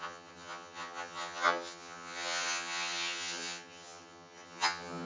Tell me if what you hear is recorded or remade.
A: remade